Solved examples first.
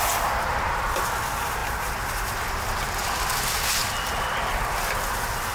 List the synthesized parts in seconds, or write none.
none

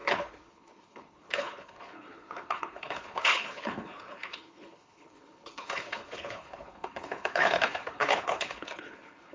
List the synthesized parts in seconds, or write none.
0.0-9.3

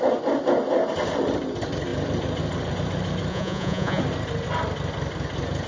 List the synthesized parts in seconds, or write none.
3.3-4.0

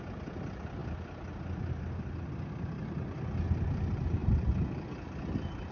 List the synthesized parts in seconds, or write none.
none